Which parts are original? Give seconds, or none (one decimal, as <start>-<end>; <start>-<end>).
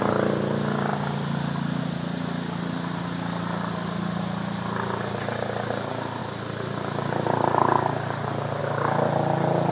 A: 0.0-9.7